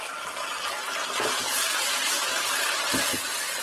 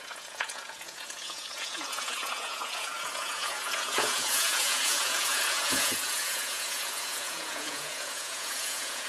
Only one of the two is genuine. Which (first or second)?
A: first